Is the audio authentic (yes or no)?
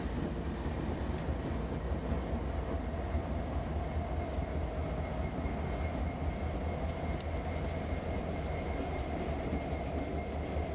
yes